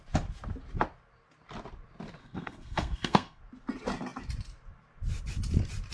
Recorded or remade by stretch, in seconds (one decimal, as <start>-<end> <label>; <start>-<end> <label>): 0.0-2.2 recorded; 2.2-3.4 remade; 3.4-5.9 recorded